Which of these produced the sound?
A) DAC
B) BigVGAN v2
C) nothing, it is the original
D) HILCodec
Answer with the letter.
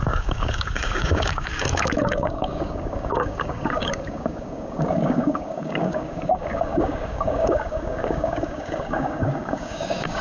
A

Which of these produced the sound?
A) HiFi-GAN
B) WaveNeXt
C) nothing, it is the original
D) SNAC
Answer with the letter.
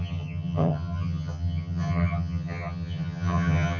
A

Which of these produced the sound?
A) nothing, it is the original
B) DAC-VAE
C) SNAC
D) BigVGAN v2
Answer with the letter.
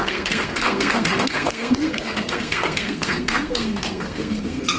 C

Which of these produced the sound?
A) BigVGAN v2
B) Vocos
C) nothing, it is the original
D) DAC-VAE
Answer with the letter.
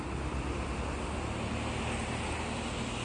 C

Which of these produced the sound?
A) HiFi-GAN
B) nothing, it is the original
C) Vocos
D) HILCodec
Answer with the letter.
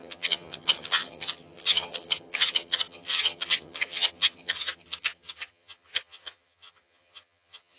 A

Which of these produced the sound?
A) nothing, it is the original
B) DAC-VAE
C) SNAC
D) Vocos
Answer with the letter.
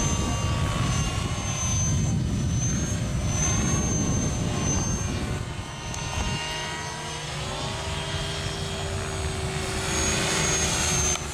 A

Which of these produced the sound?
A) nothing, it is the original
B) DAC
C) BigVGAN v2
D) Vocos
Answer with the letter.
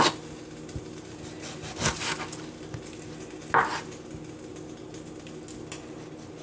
A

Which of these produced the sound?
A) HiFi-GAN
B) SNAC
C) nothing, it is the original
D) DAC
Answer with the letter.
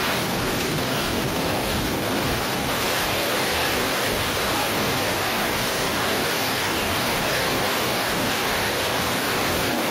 D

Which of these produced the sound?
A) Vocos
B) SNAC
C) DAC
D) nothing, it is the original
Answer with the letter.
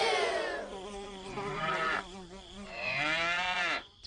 A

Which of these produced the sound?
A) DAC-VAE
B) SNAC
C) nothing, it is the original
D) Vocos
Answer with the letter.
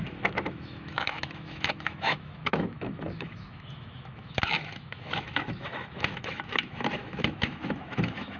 A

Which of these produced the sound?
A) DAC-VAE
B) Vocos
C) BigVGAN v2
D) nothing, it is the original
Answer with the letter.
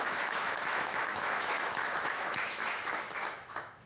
A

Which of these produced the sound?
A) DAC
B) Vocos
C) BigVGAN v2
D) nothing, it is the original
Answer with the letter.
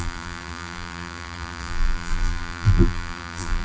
C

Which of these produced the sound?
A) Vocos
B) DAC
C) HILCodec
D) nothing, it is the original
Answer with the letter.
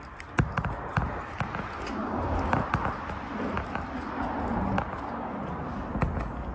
D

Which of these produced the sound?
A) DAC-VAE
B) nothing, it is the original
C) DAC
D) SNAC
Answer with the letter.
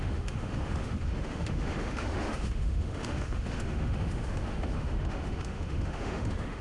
A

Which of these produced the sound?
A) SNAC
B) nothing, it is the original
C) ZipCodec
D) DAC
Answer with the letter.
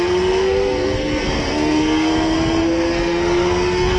A